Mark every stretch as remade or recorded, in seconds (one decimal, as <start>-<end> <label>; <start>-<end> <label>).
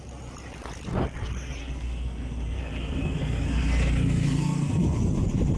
0.0-1.6 recorded; 1.6-5.0 remade; 5.0-5.6 recorded